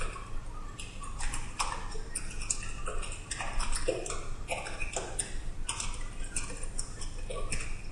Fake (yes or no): no